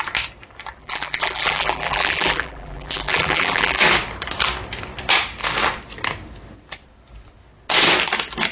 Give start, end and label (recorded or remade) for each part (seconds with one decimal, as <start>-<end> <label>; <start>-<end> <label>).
0.0-0.8 recorded; 0.8-3.8 remade; 3.8-8.5 recorded